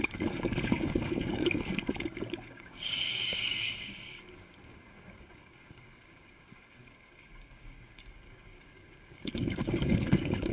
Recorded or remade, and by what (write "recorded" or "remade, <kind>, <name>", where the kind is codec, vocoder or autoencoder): remade, codec, DAC